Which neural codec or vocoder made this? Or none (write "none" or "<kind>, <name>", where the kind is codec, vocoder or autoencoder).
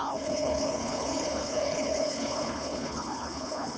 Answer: codec, HILCodec